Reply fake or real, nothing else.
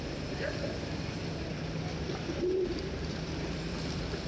fake